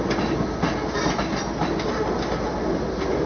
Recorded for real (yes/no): yes